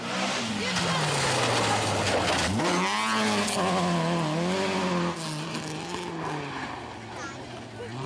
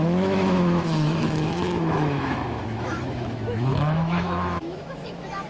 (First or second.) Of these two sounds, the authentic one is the first